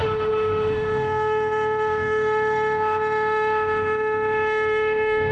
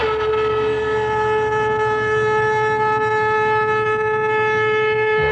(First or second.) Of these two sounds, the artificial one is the first